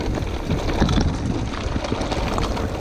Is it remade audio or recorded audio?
recorded